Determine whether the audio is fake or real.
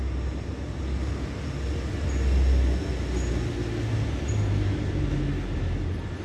real